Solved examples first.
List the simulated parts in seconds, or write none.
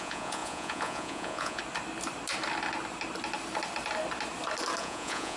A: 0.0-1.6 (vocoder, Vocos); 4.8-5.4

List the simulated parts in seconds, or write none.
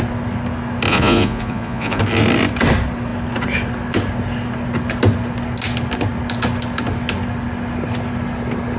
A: 0.9-2.0 (vocoder, Vocos)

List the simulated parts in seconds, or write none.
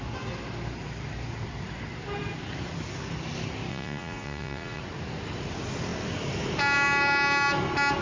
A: 3.7-4.8 (vocoder, Vocos)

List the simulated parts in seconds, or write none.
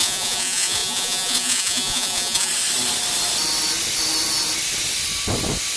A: 0.0-2.5 (vocoder, Vocos)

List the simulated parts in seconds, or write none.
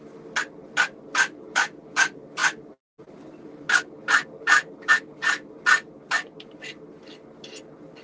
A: none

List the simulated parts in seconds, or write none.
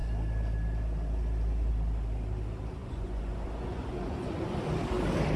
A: 2.8-4.6 (vocoder, Vocos)